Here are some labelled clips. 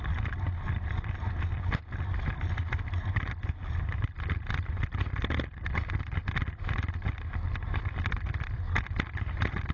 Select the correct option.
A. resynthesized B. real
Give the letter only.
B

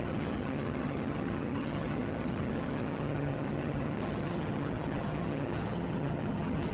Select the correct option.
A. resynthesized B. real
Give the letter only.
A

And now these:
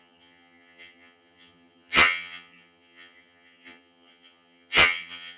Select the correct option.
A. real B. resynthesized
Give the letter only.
B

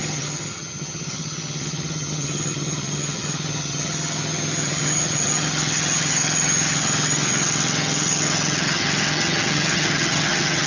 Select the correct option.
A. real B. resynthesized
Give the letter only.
B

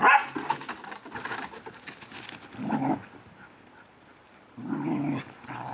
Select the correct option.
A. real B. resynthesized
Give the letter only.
A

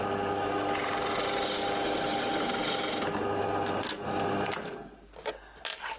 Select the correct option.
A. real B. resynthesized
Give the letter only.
A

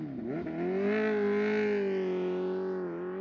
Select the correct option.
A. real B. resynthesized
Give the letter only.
A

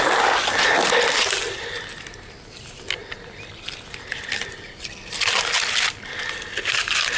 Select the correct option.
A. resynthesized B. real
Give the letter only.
B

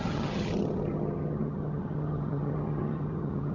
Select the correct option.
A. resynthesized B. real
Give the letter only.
A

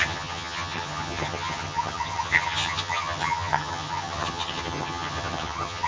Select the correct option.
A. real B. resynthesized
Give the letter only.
B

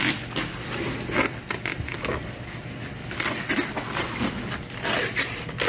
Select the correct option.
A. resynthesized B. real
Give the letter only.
B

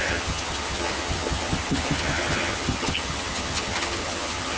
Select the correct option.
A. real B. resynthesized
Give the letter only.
B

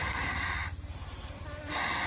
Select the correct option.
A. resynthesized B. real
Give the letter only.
B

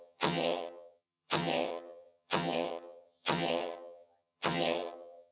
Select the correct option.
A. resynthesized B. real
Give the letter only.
A